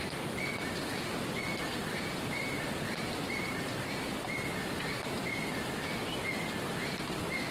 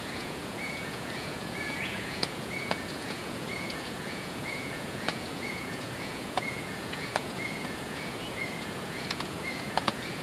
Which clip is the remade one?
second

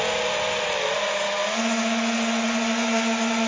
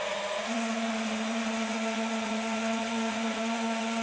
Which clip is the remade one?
second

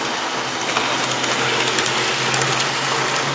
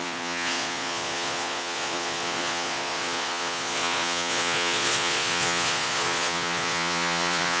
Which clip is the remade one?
second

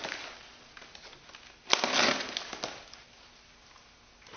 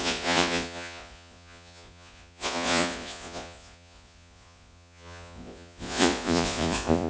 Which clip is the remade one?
second